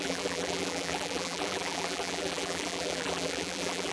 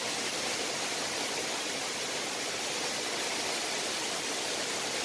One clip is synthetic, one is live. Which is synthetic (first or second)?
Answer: first